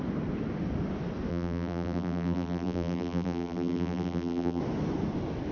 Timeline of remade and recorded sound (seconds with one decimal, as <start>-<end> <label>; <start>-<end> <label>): 0.0-1.3 recorded; 1.3-4.6 remade; 4.6-5.5 recorded